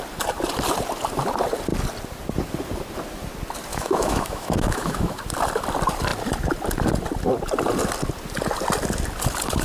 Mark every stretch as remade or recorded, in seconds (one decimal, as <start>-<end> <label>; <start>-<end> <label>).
0.0-3.7 recorded; 3.7-5.2 remade; 5.2-9.6 recorded